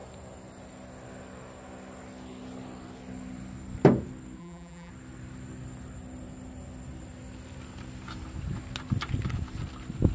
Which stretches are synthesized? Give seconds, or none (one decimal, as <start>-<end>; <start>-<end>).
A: 4.4-4.9